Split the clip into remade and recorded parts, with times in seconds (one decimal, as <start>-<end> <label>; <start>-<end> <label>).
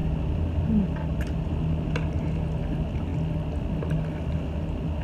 0.0-5.0 recorded